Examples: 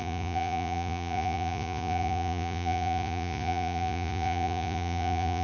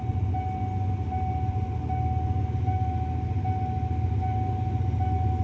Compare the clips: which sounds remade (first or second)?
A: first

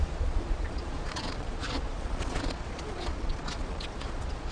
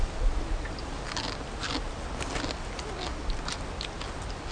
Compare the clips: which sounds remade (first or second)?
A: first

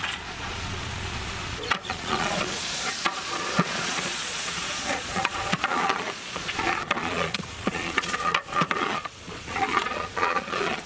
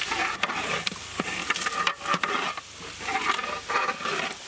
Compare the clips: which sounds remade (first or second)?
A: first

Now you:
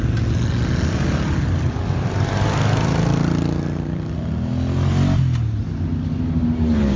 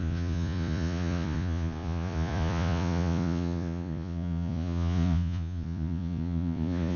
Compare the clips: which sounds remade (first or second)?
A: second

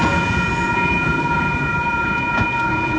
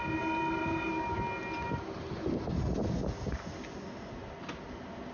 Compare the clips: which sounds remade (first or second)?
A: first